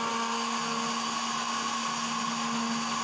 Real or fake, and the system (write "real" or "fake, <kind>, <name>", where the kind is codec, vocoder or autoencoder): real